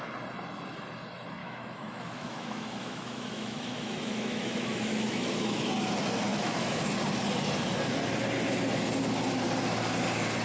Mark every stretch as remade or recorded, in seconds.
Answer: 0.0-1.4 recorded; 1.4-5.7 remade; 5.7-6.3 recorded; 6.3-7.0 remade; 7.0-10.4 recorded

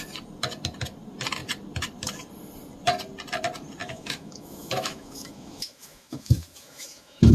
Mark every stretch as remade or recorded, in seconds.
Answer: 0.0-3.8 recorded; 3.8-7.3 remade

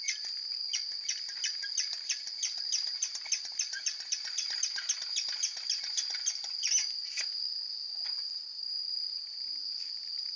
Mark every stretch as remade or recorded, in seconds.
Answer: 0.0-10.4 recorded